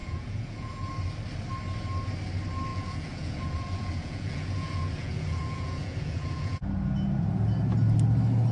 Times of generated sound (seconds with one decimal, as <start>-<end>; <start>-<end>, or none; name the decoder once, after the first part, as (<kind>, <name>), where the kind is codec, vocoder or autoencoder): 0.0-0.9 (vocoder, Vocos); 2.7-6.7